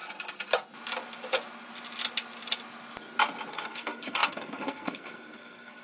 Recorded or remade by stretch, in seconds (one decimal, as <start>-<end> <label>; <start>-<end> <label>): 0.0-3.5 recorded; 3.5-5.8 remade